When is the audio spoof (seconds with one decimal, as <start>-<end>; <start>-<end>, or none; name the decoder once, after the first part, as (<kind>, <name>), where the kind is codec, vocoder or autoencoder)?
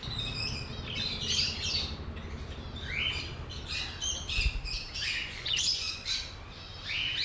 5.2-5.9 (vocoder, Vocos)